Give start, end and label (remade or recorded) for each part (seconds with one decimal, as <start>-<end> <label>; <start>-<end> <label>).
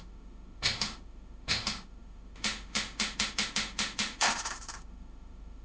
0.0-5.6 remade